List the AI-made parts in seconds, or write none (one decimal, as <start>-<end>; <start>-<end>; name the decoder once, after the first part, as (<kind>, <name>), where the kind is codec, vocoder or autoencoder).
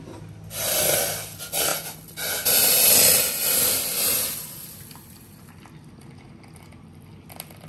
none